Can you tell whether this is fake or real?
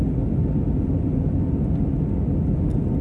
real